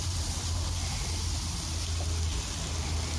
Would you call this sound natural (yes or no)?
yes